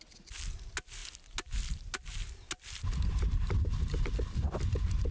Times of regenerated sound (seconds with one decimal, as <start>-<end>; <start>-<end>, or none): none